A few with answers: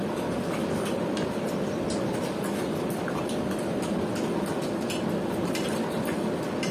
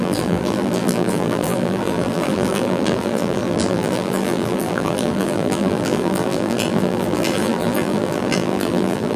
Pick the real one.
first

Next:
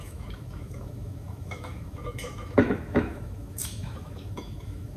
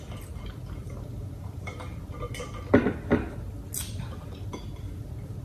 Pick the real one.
second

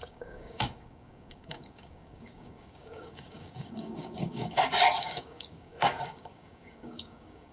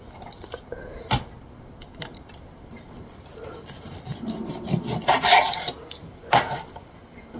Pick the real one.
second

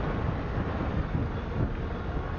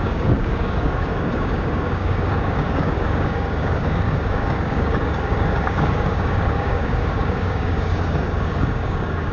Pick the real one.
first